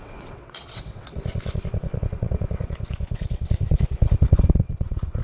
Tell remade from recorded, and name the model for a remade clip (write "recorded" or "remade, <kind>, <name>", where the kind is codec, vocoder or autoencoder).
remade, vocoder, WaveNeXt